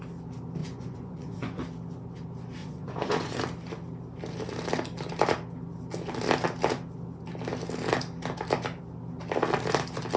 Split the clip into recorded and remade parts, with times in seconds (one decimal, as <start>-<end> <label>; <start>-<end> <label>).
0.0-0.6 recorded; 0.6-1.6 remade; 1.6-2.6 recorded; 2.6-3.4 remade; 3.4-10.2 recorded